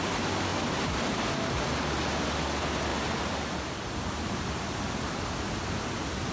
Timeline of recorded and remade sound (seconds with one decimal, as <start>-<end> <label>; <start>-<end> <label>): 0.0-0.5 recorded; 0.5-1.1 remade; 1.1-2.9 recorded; 2.9-4.8 remade; 4.8-6.3 recorded